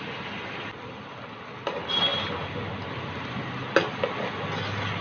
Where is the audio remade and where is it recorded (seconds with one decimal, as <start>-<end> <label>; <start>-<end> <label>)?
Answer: 0.0-5.0 recorded